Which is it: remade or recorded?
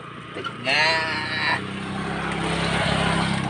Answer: recorded